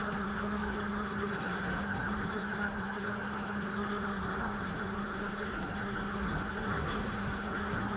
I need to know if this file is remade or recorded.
remade